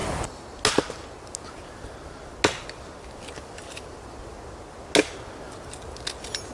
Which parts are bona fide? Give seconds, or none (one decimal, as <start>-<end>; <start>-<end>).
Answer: 0.0-6.5